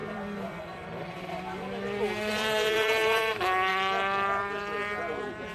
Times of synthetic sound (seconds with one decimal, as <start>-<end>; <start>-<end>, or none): 0.0-3.3; 3.7-4.4